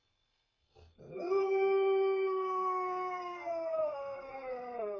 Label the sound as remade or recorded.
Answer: remade